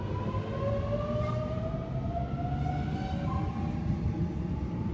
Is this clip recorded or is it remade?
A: recorded